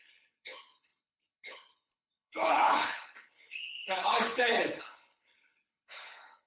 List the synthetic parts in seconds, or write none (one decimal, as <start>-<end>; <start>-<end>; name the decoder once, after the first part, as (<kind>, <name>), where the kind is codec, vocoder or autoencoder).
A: 0.0-6.5 (codec, HILCodec)